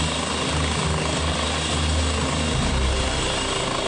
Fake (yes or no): no